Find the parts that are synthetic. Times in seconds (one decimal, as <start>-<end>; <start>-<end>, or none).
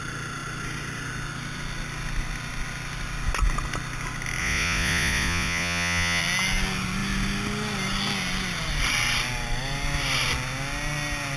4.4-6.2